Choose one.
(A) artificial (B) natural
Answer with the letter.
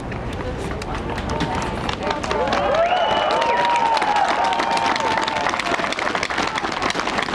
B